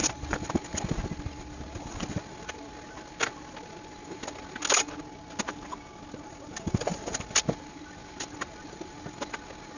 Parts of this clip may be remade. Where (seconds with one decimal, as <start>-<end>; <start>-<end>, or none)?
none